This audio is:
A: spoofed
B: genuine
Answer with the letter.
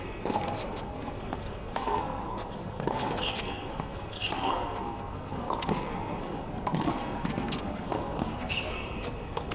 A